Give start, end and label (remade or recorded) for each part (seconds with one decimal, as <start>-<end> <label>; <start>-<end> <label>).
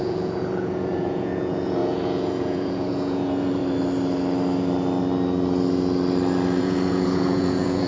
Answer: 0.0-3.6 remade; 3.6-6.6 recorded; 6.6-7.9 remade